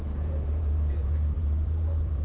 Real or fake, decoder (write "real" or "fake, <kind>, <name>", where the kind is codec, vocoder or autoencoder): fake, vocoder, BigVGAN v2